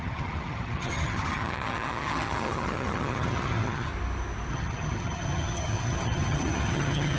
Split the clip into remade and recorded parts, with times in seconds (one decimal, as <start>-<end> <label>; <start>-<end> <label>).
0.0-3.9 remade; 3.9-4.5 recorded; 4.5-7.2 remade